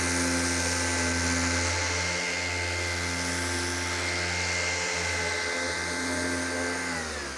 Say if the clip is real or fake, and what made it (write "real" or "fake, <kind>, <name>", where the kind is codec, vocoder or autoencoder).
real